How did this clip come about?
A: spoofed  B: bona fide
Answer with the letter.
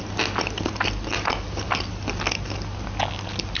B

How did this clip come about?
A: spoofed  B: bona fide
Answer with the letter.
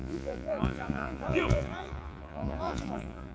A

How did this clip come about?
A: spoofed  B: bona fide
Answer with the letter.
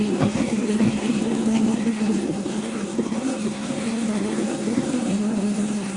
A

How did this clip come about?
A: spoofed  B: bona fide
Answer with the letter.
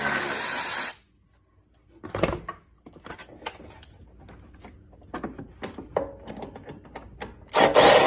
B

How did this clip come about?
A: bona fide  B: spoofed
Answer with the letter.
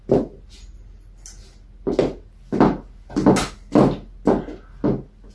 A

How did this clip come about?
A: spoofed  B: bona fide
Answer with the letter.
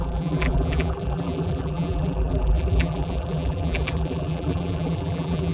A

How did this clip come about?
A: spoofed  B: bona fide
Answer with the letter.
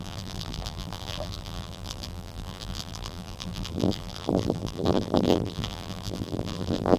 A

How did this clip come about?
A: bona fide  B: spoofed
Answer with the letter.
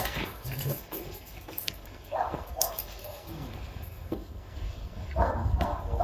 B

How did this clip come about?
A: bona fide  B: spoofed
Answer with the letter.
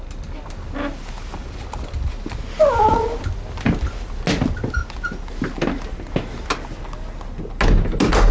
A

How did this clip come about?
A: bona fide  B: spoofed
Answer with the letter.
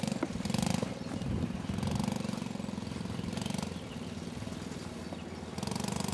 A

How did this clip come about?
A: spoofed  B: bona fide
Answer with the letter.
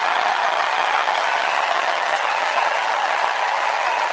A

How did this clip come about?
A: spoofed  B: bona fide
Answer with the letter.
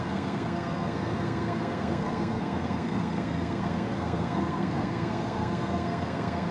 A